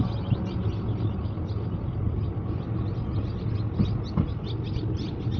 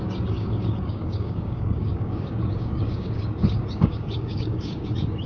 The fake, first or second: second